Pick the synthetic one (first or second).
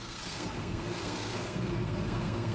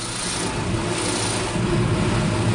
first